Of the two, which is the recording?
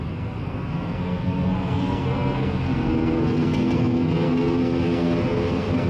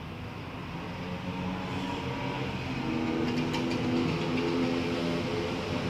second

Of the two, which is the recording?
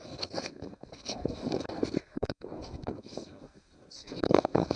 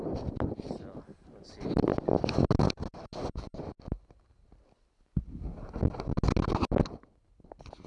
second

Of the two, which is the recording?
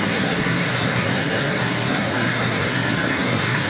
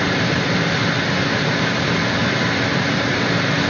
second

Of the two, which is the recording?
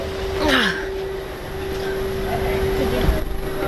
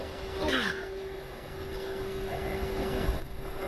first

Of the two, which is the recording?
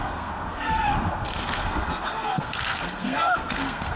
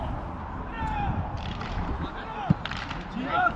second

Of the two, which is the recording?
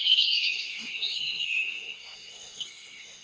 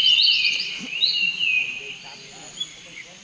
second